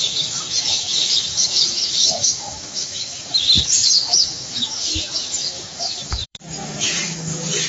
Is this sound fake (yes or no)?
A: yes